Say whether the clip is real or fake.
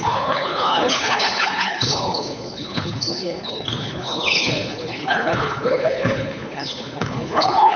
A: fake